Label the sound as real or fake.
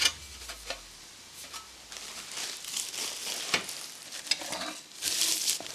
real